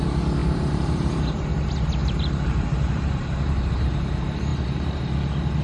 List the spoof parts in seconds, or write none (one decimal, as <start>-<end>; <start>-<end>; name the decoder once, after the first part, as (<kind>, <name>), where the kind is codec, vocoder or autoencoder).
0.4-1.1 (vocoder, BigVGAN v2); 2.0-3.9; 4.5-5.0